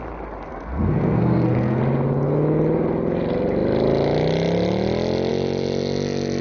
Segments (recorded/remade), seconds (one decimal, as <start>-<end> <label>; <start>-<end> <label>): 0.0-0.5 recorded; 0.5-1.8 remade; 1.8-6.4 recorded